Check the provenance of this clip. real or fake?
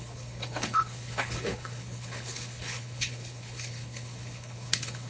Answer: fake